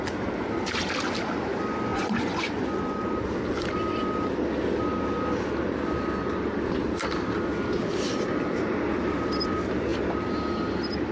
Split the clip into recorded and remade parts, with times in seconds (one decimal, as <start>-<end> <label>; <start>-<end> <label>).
0.0-1.9 recorded; 1.9-3.0 remade; 3.0-11.1 recorded